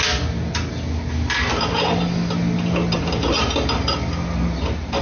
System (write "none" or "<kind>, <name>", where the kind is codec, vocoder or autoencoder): none